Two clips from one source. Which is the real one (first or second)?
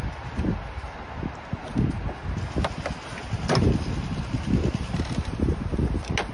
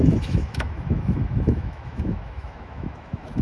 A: first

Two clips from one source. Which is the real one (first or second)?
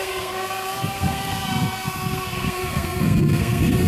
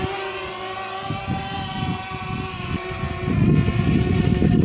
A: second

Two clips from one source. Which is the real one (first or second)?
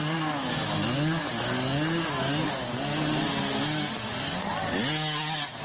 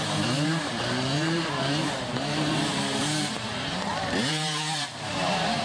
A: first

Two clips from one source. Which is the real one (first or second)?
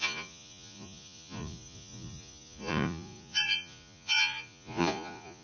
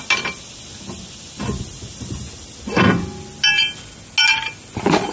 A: second